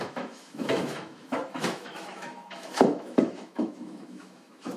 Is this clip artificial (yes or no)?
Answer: yes